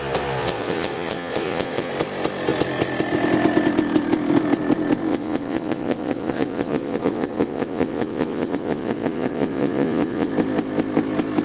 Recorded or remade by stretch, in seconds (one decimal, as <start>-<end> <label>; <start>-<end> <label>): 0.0-0.4 recorded; 0.4-1.9 remade; 1.9-5.1 recorded; 5.1-10.3 remade; 10.3-11.4 recorded